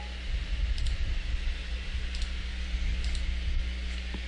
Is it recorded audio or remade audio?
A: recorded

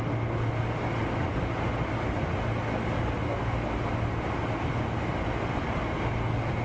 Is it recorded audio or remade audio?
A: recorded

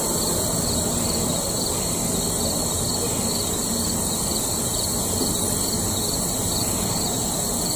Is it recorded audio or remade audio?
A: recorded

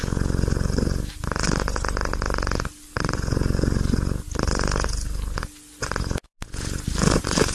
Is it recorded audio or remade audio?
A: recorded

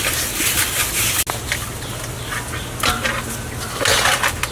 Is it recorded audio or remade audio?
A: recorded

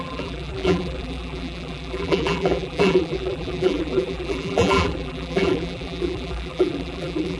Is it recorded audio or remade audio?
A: remade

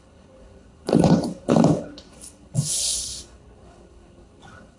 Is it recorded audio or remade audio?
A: remade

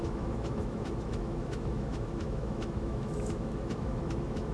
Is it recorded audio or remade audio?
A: remade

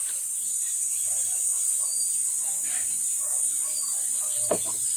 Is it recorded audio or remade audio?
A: recorded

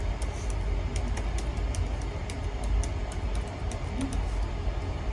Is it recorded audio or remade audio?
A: recorded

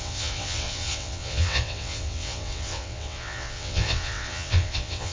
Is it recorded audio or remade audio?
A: remade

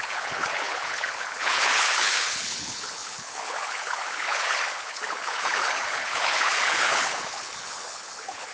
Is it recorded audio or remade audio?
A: remade